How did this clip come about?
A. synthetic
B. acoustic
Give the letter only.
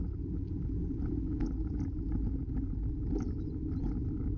B